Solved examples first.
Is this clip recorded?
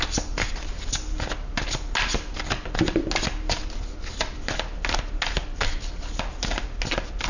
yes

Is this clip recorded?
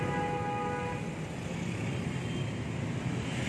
yes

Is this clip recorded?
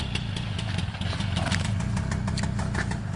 yes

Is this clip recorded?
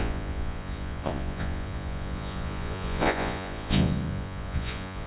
no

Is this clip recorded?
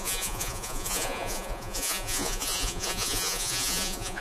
no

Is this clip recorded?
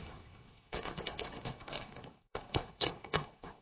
no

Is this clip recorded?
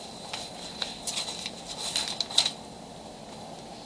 no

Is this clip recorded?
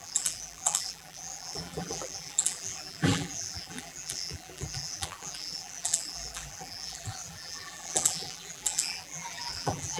no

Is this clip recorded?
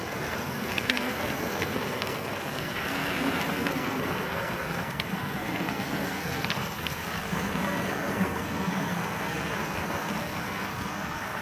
no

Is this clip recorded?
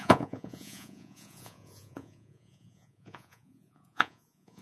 no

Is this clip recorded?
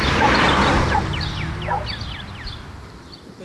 yes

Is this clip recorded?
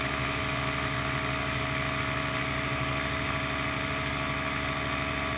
yes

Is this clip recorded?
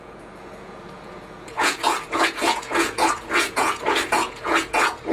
no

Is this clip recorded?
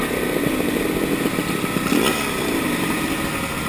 yes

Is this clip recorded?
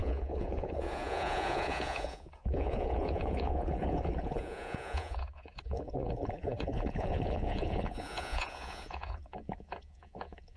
no